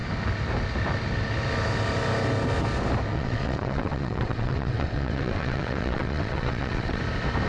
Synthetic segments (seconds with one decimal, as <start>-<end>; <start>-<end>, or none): 3.1-7.0